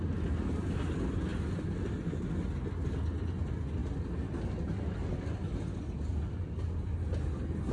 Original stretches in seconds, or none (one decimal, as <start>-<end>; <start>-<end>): 0.0-7.7